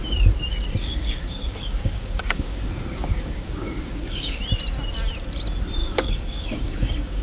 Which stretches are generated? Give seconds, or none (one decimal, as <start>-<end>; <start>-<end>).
0.8-4.4; 5.8-7.2